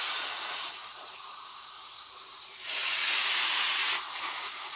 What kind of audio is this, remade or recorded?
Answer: remade